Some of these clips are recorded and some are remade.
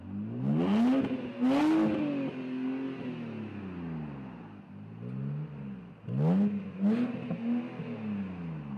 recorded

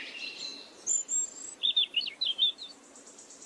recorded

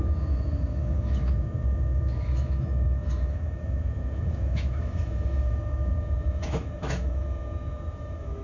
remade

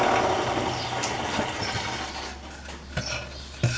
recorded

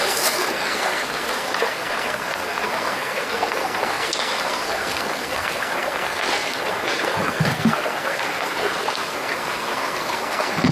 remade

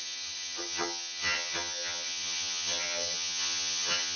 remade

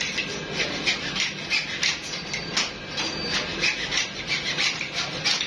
recorded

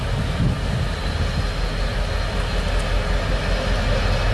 recorded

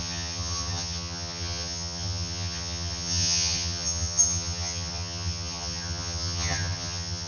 remade